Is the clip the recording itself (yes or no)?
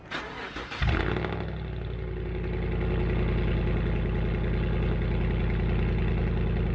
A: yes